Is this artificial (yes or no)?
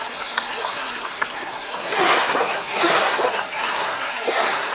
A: yes